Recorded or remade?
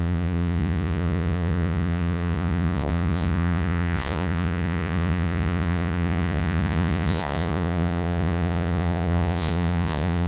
remade